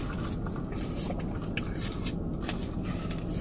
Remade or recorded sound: recorded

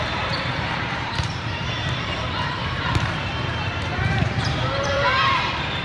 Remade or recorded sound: remade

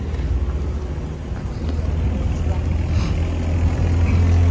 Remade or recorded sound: recorded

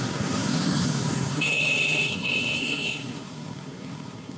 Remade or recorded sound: remade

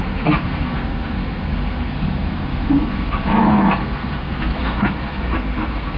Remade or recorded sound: remade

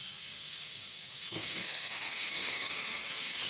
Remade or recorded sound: remade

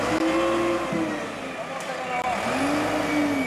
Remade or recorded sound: recorded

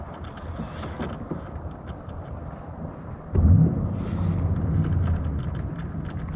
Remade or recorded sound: recorded